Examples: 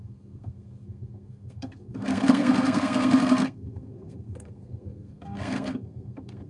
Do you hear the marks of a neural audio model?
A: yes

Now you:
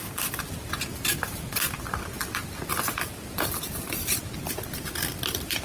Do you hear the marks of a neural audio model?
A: yes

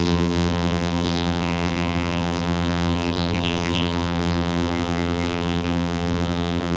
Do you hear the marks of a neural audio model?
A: yes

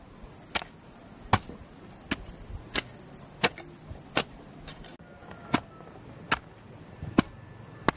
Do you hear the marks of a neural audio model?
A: no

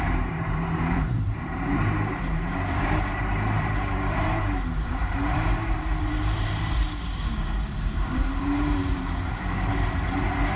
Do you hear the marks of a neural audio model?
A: yes